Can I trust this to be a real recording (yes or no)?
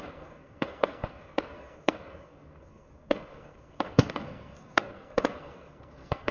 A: no